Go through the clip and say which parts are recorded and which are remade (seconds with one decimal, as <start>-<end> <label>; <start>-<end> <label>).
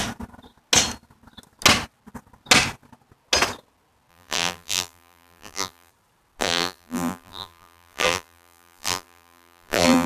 0.0-4.1 recorded; 4.1-5.9 remade; 5.9-6.4 recorded; 6.4-10.1 remade